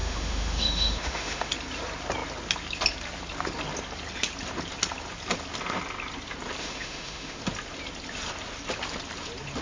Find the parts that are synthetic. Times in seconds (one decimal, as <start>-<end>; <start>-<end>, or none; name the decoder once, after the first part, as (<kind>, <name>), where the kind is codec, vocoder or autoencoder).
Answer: 0.0-1.5 (autoencoder, DAC-VAE); 6.6-7.4

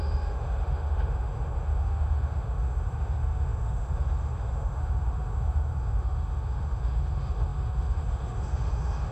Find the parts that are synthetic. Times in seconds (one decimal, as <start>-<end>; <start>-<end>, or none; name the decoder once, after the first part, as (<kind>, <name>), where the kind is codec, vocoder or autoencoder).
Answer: 0.0-9.1 (autoencoder, DAC-VAE)

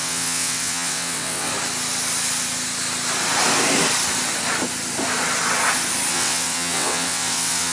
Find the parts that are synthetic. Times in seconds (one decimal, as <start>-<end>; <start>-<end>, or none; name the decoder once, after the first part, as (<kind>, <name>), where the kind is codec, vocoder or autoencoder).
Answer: 0.0-1.5 (vocoder, WaveNeXt); 6.1-7.7

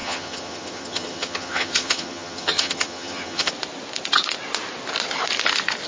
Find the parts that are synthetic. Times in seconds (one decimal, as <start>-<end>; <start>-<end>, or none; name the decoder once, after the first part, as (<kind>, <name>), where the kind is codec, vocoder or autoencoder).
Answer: 0.0-3.5 (vocoder, HiFi-GAN)

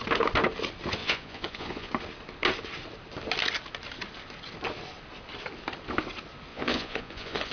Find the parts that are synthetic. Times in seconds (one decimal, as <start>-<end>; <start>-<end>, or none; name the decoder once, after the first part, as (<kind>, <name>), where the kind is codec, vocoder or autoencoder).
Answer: 1.0-1.9 (vocoder, Vocos); 6.5-7.5

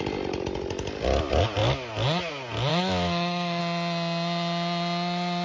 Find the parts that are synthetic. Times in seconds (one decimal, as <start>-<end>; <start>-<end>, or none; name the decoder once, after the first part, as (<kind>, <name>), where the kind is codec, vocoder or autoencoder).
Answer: 2.7-3.6 (autoencoder, DAC-VAE)